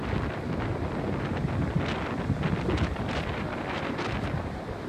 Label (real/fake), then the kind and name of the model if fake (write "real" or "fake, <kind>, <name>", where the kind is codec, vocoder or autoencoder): real